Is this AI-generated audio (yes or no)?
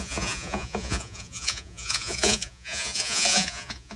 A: yes